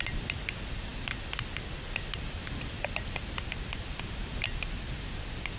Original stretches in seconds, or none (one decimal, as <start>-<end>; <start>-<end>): 0.0-5.6